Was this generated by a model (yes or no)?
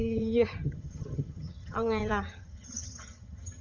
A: yes